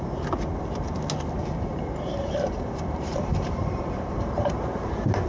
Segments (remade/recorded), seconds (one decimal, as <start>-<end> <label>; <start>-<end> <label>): 0.0-1.4 recorded; 1.4-4.6 remade; 4.6-5.3 recorded